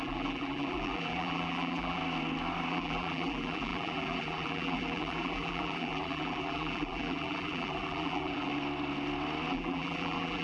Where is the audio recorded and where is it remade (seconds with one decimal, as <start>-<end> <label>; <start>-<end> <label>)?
0.0-2.0 remade; 2.0-2.7 recorded; 2.7-8.5 remade; 8.5-9.5 recorded; 9.5-10.4 remade